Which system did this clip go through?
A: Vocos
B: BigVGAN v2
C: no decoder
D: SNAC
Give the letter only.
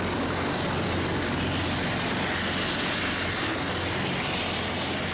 C